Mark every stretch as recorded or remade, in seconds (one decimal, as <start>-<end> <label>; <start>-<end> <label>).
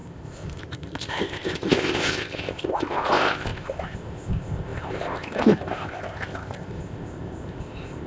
0.0-8.1 remade